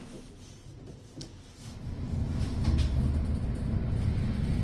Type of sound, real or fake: real